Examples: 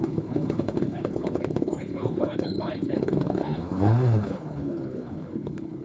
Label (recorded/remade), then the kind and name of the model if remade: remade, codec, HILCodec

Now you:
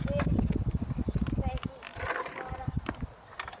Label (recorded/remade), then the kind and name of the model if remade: recorded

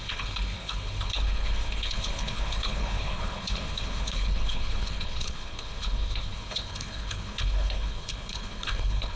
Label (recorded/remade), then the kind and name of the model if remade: remade, codec, HILCodec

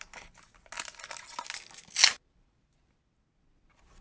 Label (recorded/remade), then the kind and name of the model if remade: recorded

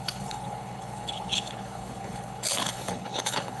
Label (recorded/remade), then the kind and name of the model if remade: remade, codec, HILCodec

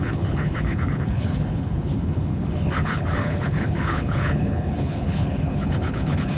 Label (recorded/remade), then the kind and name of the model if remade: remade, codec, HILCodec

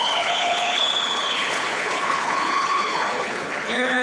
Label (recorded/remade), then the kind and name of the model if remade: remade, codec, HILCodec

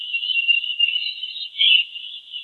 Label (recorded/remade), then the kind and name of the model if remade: recorded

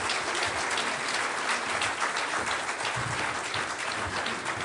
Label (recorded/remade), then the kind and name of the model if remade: recorded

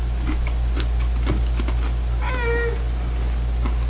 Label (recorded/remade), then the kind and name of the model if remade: recorded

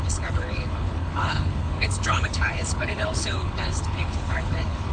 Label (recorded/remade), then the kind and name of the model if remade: remade, codec, HILCodec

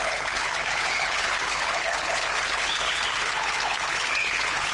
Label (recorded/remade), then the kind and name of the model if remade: remade, codec, HILCodec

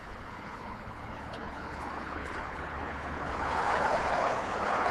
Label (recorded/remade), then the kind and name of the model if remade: remade, codec, HILCodec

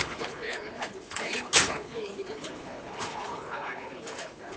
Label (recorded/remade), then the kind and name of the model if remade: remade, codec, HILCodec